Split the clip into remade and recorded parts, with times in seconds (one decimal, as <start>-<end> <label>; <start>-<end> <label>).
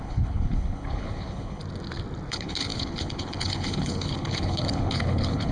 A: 0.0-1.6 remade; 1.6-2.3 recorded; 2.3-5.5 remade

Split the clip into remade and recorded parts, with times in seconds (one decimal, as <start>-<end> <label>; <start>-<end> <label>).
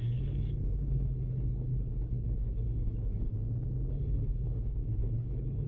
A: 0.0-3.3 remade; 3.3-3.9 recorded; 3.9-5.7 remade